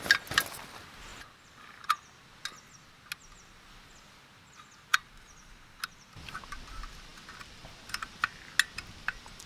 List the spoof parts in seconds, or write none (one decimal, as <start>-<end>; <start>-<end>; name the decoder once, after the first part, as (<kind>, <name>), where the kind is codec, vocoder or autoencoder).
none